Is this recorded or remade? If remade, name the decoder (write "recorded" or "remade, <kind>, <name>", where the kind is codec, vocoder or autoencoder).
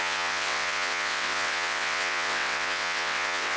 remade, vocoder, WaveNeXt